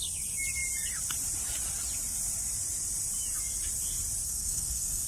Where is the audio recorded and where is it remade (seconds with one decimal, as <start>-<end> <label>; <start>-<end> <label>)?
0.0-4.2 recorded; 4.2-5.1 remade